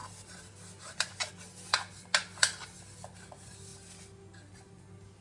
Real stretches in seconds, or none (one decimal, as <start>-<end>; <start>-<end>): 0.0-5.2